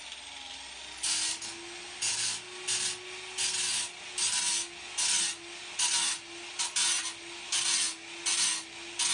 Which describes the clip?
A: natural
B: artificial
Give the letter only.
A